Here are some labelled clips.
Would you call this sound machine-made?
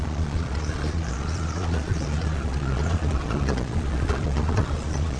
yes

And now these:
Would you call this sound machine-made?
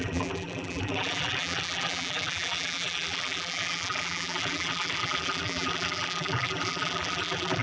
yes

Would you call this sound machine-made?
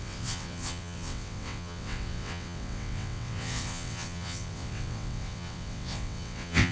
yes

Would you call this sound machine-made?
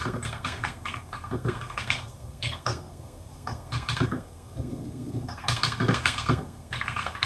yes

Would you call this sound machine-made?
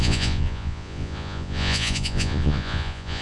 yes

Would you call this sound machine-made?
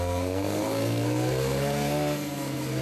yes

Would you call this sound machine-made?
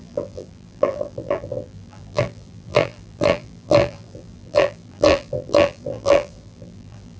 yes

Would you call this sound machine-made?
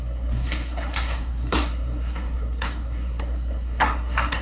yes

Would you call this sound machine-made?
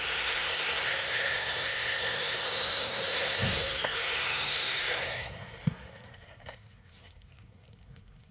yes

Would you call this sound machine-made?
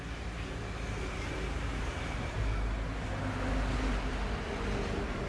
no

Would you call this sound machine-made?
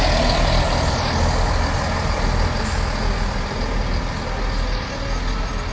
no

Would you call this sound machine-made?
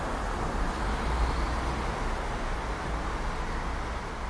no